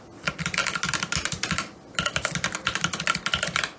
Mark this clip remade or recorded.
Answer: recorded